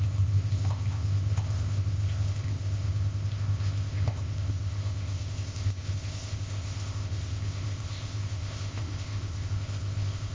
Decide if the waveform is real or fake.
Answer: fake